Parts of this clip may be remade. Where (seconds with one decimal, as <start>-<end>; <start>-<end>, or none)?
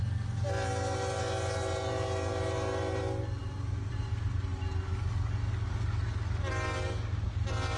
3.4-4.3